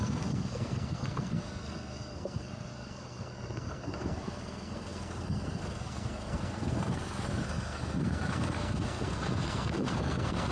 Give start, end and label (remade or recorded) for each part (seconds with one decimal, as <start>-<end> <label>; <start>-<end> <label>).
0.0-10.5 remade